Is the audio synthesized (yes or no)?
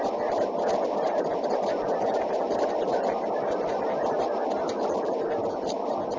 yes